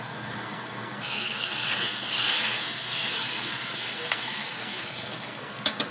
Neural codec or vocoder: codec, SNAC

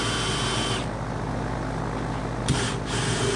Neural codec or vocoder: none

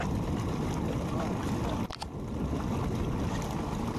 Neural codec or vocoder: none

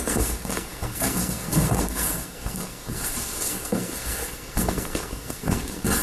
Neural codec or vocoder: codec, SNAC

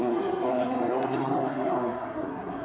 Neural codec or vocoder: codec, SNAC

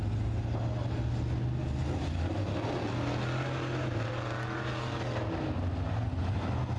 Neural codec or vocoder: none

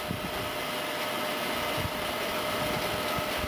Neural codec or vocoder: none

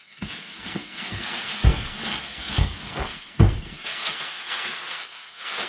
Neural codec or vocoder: codec, SNAC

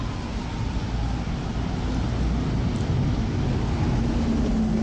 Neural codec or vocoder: none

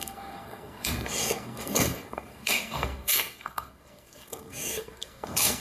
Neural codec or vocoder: codec, SNAC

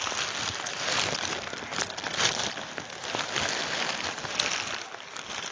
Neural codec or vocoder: none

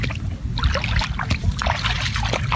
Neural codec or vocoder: none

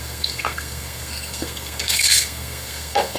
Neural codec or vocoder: codec, SNAC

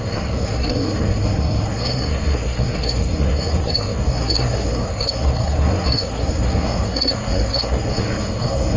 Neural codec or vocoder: codec, SNAC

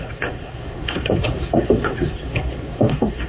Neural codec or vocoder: codec, SNAC